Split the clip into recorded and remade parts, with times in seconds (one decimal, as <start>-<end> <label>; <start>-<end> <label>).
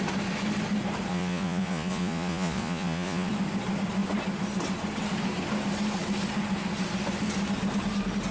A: 0.0-1.1 recorded; 1.1-3.3 remade; 3.3-8.3 recorded